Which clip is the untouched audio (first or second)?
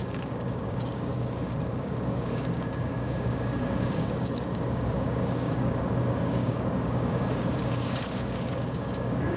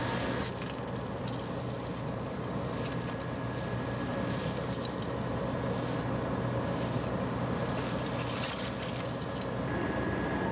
second